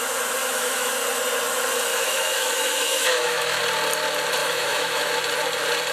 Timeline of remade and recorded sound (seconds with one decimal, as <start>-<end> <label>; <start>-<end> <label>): 0.0-0.4 recorded; 0.4-0.9 remade; 0.9-1.9 recorded; 1.9-3.6 remade; 3.6-4.4 recorded; 4.4-5.1 remade; 5.1-5.9 recorded